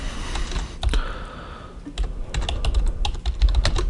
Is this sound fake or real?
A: real